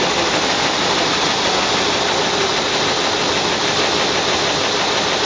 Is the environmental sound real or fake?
real